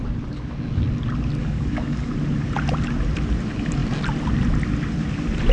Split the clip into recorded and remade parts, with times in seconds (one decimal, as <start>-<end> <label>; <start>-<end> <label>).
0.0-1.4 recorded; 1.4-2.1 remade; 2.1-5.5 recorded